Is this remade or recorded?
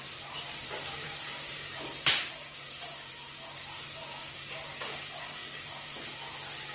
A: remade